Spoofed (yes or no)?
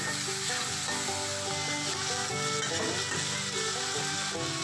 no